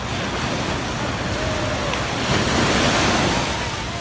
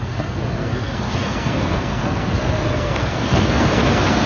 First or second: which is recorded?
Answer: first